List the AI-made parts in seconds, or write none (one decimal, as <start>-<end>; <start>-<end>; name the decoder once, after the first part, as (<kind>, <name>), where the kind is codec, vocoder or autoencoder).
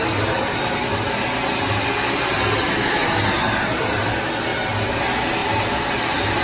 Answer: 4.5-5.0 (vocoder, BigVGAN v2)